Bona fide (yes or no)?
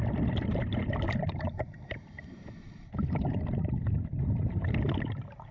no